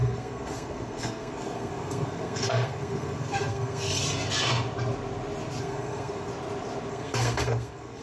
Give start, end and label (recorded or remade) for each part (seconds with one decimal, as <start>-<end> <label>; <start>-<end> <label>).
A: 0.0-4.0 remade; 4.0-5.6 recorded; 5.6-6.3 remade; 6.3-6.9 recorded; 6.9-8.0 remade